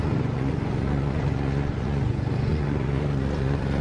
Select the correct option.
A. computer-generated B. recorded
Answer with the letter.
A